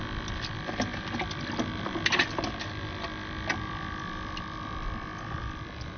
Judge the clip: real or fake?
real